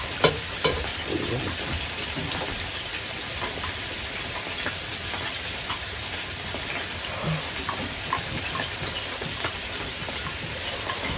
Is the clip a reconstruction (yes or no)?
yes